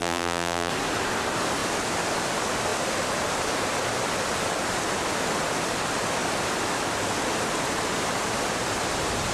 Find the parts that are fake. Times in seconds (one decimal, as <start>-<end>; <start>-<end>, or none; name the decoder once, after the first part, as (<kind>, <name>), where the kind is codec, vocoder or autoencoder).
0.0-0.7 (vocoder, BigVGAN v2)